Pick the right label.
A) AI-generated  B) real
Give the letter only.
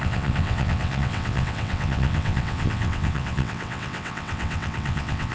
A